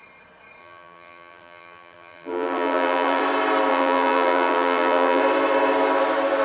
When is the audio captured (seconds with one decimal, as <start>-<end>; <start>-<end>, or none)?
0.0-0.6; 3.2-3.7; 5.2-6.4